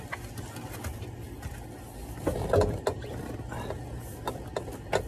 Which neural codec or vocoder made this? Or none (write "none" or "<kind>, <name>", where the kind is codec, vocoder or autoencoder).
none